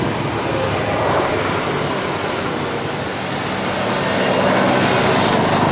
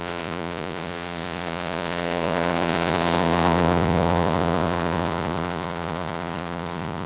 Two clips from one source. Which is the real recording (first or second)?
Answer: first